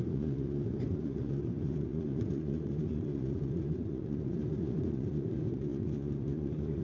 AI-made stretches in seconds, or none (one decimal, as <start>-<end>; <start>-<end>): 0.0-6.8